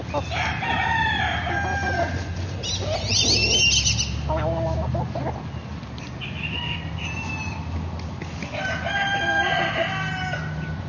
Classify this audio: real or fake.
real